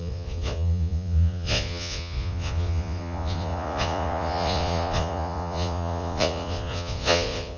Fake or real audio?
fake